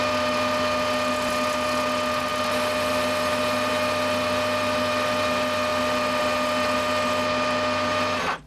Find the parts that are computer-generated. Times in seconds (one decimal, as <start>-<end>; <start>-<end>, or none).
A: none